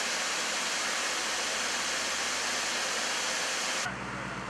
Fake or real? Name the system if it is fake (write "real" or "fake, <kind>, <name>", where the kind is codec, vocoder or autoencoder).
real